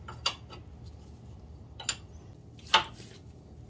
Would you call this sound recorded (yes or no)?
yes